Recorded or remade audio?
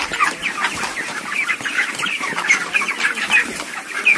remade